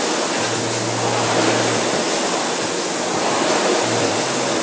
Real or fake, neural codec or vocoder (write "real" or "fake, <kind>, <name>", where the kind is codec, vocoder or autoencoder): real